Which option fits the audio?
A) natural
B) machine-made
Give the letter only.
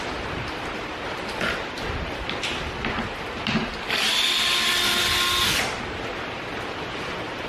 A